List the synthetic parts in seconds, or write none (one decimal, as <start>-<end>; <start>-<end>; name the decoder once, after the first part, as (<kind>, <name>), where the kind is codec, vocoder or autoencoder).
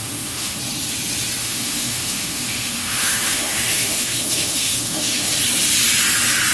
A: 0.0-0.6 (autoencoder, DAC-VAE); 1.4-5.3